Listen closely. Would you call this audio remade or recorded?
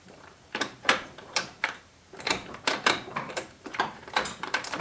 remade